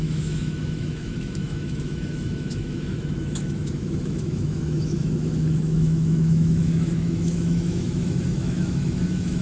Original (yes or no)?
no